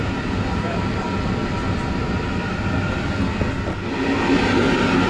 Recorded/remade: recorded